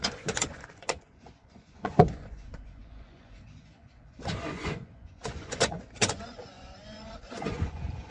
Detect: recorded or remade remade